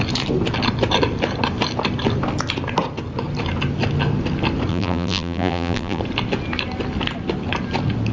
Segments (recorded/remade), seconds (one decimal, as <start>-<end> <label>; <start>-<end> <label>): 0.0-4.7 recorded; 4.7-6.0 remade; 6.0-8.1 recorded